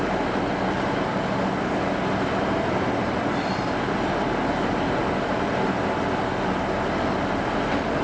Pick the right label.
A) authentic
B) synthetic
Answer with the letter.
A